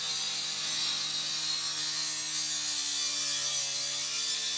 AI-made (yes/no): no